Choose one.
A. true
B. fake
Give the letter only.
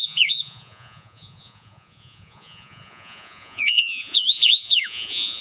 B